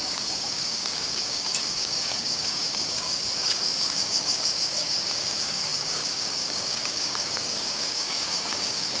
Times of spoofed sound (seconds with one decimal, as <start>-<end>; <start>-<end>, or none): 0.0-9.0